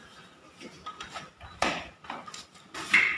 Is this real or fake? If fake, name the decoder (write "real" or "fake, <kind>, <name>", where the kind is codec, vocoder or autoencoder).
real